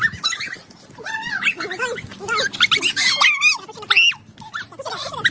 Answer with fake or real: real